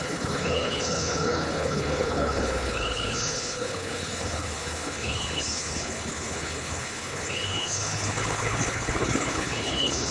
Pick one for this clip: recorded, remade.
remade